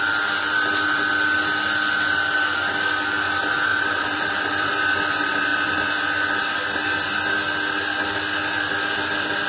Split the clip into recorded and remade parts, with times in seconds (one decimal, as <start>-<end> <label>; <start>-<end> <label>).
0.0-3.7 recorded; 3.7-4.7 remade; 4.7-9.5 recorded